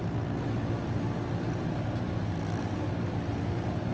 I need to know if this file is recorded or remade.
recorded